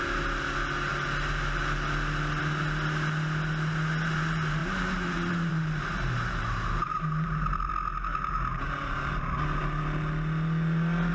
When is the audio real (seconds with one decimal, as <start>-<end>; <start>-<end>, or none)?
0.0-4.6; 7.7-8.1; 9.2-11.1